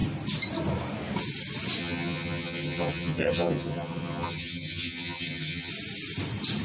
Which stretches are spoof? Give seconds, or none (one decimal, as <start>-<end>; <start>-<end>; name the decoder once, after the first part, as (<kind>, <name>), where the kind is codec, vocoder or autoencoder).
1.8-5.7 (vocoder, HiFi-GAN)